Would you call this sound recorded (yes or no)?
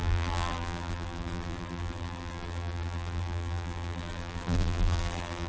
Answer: no